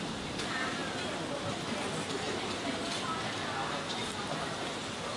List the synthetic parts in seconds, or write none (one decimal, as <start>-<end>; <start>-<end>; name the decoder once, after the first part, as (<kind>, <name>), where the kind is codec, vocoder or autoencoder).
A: 0.0-0.8 (vocoder, BigVGAN v2); 3.9-5.2